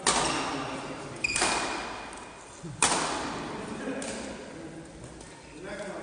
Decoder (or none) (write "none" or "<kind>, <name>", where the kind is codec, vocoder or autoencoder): none